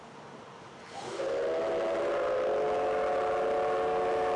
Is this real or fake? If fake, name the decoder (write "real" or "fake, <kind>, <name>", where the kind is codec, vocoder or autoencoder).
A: real